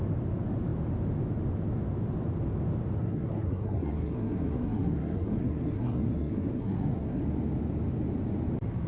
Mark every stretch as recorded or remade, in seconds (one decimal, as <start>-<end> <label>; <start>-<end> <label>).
0.0-3.0 recorded; 3.0-7.2 remade; 7.2-8.9 recorded